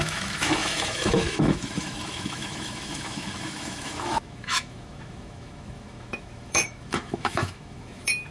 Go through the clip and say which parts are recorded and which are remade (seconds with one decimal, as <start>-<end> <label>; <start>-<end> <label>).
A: 0.0-8.3 remade